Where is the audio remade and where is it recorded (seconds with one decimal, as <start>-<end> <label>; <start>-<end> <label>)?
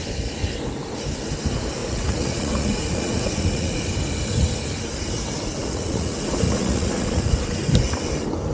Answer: 0.0-1.8 recorded; 1.8-3.8 remade; 3.8-5.6 recorded; 5.6-7.3 remade; 7.3-8.5 recorded